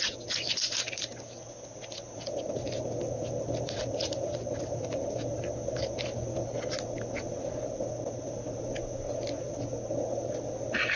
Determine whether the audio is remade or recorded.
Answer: recorded